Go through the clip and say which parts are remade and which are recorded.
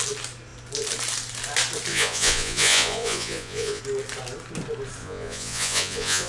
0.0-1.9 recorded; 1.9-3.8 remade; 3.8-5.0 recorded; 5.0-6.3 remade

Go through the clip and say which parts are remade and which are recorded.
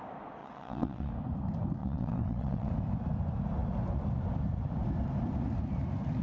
0.0-0.4 recorded; 0.4-1.1 remade; 1.1-1.8 recorded; 1.8-2.7 remade; 2.7-6.2 recorded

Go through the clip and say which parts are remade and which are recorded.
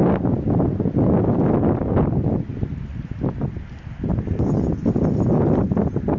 0.0-0.5 remade; 0.5-6.2 recorded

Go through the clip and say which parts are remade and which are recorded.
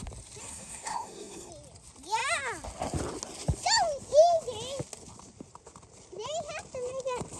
0.0-0.4 recorded; 0.4-1.5 remade; 1.5-7.4 recorded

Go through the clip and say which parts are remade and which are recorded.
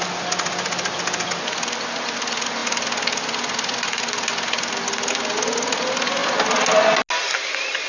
0.0-7.9 recorded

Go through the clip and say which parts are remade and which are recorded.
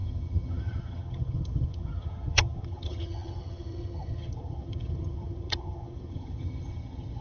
0.0-7.2 remade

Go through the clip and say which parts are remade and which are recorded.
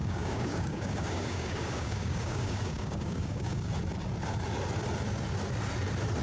0.0-3.7 remade; 3.7-6.2 recorded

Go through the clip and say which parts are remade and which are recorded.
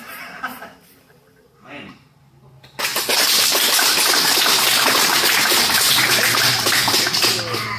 0.0-2.9 recorded; 2.9-6.8 remade; 6.8-7.8 recorded